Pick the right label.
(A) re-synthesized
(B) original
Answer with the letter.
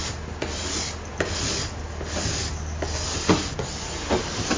B